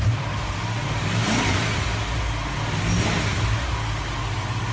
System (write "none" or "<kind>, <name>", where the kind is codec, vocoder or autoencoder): none